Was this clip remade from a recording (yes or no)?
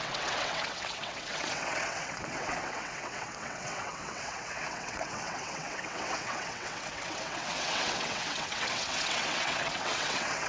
yes